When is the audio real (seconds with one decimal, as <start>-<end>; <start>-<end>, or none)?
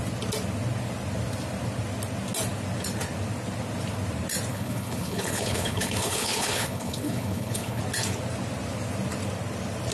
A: 0.0-4.5; 7.8-9.9